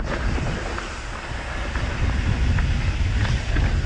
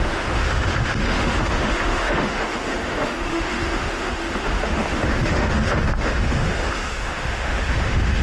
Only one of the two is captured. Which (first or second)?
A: first